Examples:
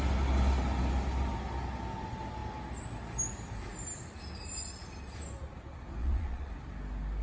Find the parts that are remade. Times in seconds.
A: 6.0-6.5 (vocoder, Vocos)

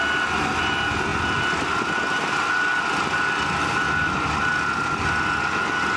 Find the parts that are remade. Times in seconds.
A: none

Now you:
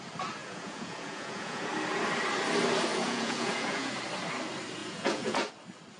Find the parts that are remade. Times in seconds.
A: 0.4-1.7 (vocoder, Vocos); 2.9-3.9; 4.8-5.5